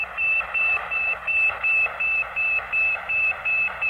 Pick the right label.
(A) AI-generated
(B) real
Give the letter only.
B